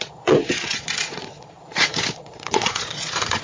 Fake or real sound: fake